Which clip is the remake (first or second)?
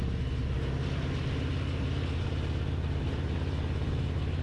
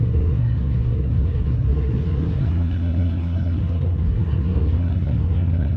second